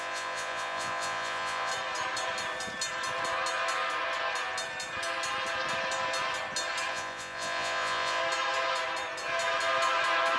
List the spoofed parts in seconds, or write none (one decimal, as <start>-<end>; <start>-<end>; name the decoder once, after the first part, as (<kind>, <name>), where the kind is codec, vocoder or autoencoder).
0.0-1.7 (vocoder, Vocos); 6.9-8.2